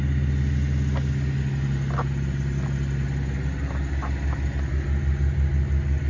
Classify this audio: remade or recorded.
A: recorded